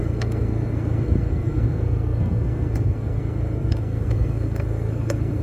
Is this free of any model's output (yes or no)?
no